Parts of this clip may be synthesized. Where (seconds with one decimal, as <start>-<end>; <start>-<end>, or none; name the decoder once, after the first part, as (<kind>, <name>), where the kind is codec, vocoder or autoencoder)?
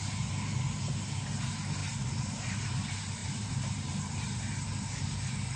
1.8-2.8 (vocoder, BigVGAN v2); 3.2-4.4